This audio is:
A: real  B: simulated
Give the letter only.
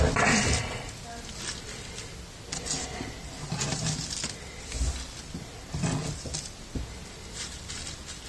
A